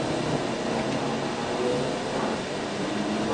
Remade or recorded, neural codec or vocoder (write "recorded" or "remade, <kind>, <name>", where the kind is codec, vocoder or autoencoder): recorded